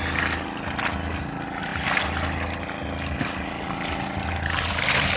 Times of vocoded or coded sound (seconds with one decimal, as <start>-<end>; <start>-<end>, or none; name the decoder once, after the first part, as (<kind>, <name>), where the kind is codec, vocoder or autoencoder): none